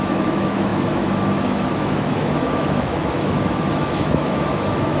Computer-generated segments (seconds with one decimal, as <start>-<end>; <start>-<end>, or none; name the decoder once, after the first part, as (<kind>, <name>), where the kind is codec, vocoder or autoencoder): 0.0-5.0 (autoencoder, DAC-VAE)